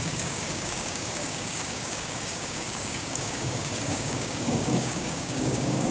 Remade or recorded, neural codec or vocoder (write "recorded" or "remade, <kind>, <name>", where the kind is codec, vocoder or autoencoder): remade, codec, DAC